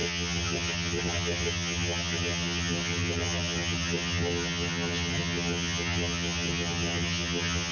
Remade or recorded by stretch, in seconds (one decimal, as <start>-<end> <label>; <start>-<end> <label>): 0.0-7.7 remade